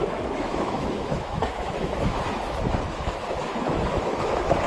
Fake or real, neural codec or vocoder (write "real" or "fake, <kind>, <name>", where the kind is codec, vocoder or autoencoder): fake, autoencoder, DAC-VAE